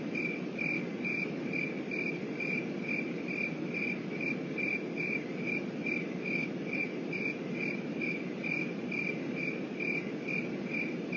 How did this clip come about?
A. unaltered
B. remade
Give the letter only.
A